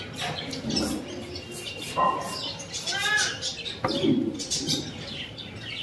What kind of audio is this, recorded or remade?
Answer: recorded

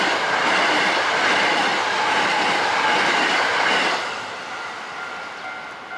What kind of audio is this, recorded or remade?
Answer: recorded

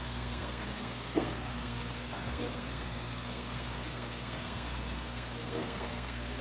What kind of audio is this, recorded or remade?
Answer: remade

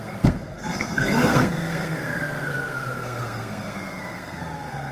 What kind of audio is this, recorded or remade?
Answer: remade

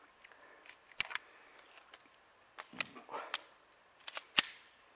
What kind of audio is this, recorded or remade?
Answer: recorded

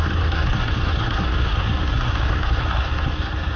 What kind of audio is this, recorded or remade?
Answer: remade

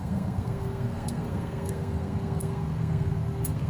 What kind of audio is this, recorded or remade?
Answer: remade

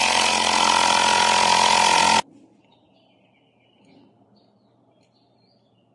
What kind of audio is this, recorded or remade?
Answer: recorded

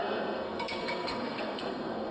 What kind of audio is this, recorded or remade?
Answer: remade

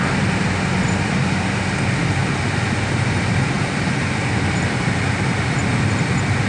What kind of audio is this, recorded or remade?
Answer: recorded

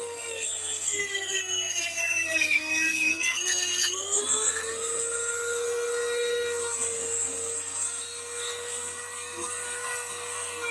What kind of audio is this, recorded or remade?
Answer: remade